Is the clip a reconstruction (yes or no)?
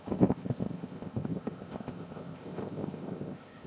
yes